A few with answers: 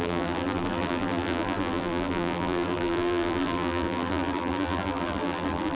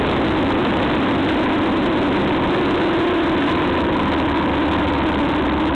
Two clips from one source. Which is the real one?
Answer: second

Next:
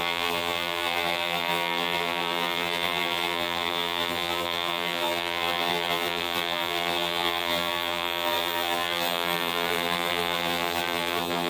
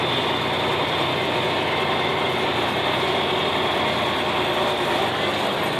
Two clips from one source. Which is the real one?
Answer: second